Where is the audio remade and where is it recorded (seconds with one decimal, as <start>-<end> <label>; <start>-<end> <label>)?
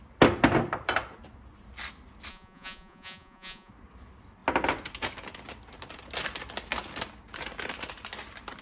0.0-2.3 recorded; 2.3-3.7 remade; 3.7-8.6 recorded